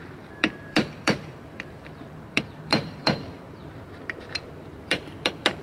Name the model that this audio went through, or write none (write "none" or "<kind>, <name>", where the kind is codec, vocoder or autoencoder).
vocoder, BigVGAN v2